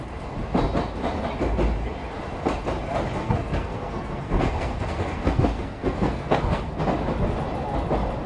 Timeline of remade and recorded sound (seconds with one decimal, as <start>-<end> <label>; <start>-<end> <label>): 0.0-3.2 recorded; 3.2-6.8 remade; 6.8-8.3 recorded